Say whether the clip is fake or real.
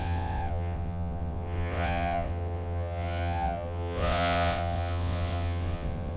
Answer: fake